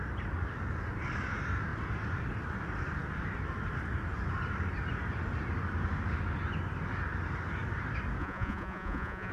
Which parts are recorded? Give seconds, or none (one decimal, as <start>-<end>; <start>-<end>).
0.0-8.2